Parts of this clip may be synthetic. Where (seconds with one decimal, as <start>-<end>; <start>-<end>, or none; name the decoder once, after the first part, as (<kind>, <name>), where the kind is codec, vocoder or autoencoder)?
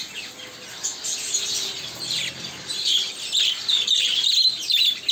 none